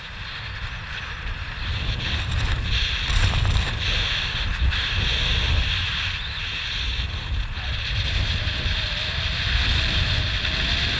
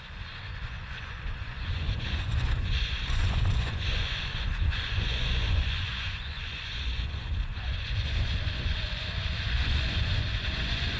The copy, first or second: second